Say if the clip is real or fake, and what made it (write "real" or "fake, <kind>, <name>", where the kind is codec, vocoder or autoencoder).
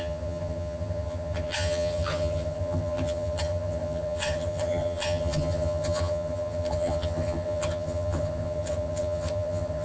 fake, vocoder, HiFi-GAN